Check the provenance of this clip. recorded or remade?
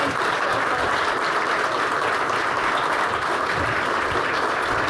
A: recorded